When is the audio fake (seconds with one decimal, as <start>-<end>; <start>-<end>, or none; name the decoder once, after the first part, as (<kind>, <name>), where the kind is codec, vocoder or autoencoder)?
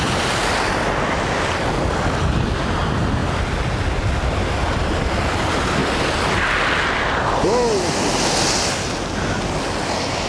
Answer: none